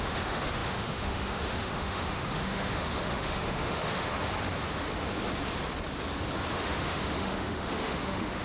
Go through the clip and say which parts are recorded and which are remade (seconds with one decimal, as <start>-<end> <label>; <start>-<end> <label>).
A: 0.0-4.3 remade; 4.3-6.5 recorded; 6.5-8.4 remade